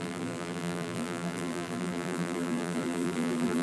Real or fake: fake